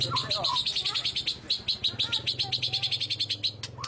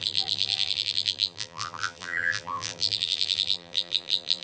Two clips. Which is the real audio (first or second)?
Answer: first